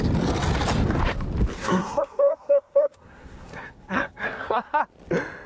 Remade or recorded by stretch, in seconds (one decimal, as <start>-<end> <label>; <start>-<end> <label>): 0.0-1.5 recorded; 1.5-4.8 remade; 4.8-5.5 recorded